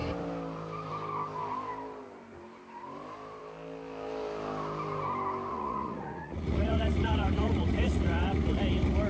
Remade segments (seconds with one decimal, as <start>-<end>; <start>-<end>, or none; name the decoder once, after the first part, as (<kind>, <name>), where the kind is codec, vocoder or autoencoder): 5.5-8.6 (vocoder, Vocos)